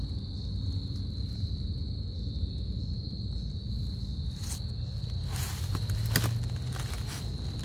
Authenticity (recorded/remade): recorded